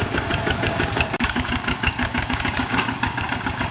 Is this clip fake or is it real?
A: fake